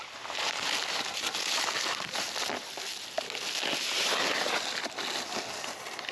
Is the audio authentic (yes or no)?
yes